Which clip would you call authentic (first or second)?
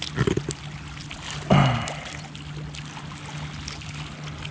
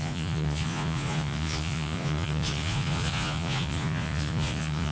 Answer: first